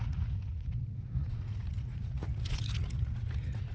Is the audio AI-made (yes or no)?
yes